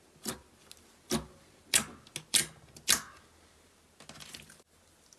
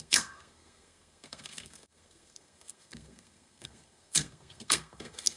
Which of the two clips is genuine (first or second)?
first